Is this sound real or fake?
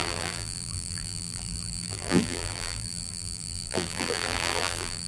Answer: fake